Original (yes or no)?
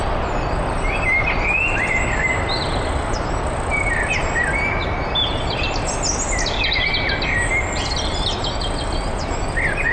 yes